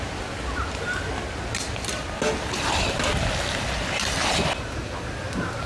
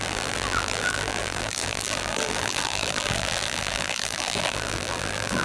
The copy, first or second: second